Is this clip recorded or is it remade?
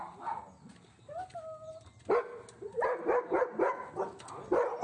recorded